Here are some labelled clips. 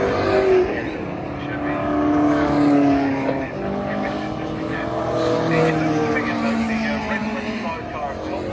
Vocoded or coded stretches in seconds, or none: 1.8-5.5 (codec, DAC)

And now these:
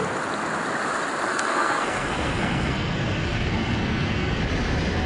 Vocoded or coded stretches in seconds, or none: 1.3-4.4 (codec, SNAC)